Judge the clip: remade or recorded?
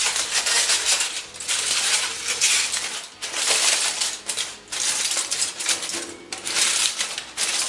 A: recorded